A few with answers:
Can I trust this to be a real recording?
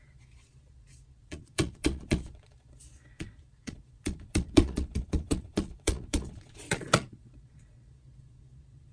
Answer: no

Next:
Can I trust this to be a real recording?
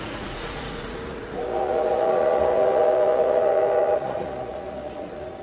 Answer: no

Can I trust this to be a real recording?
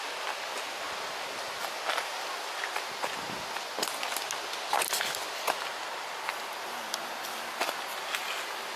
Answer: yes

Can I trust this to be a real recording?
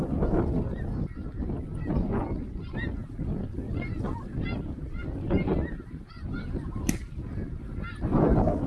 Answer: yes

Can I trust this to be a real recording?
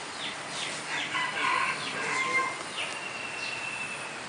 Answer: yes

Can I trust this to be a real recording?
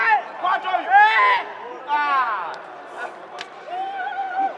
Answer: yes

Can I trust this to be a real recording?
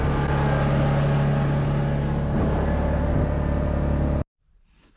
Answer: yes